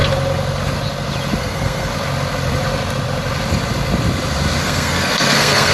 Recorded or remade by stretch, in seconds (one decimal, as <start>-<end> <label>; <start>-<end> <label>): 0.0-1.4 recorded; 1.4-1.9 remade; 1.9-4.6 recorded; 4.6-5.7 remade